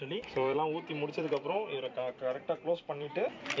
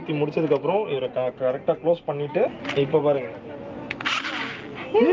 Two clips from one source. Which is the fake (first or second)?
first